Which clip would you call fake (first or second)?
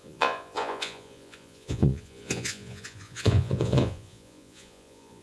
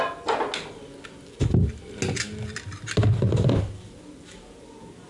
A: first